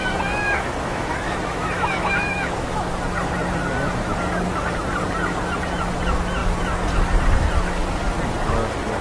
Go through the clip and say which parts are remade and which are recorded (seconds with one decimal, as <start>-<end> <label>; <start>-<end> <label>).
0.0-2.8 remade; 2.8-9.0 recorded